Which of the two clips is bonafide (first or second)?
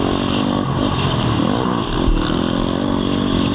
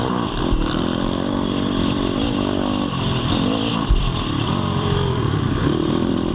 first